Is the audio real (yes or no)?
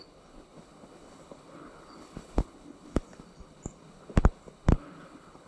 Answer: no